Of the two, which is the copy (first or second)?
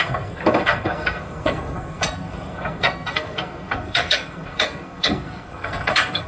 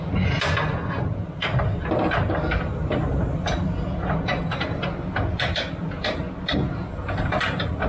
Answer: first